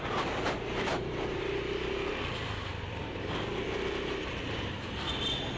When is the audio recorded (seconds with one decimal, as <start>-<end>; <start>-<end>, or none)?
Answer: 0.0-5.6